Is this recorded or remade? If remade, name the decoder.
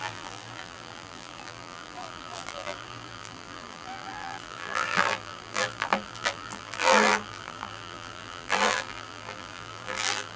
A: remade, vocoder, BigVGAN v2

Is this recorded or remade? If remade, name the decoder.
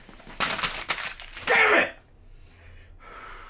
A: recorded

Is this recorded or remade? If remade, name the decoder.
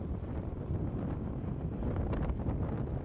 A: recorded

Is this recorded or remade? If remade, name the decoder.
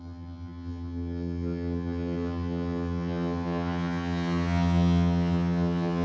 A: remade, vocoder, HiFi-GAN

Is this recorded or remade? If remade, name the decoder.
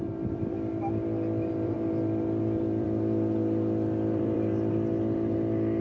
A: remade, vocoder, BigVGAN v2